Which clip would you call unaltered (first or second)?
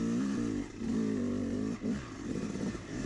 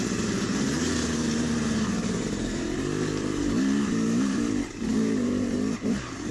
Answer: first